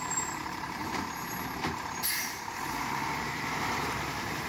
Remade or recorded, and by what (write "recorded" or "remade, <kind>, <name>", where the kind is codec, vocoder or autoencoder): remade, vocoder, BigVGAN v2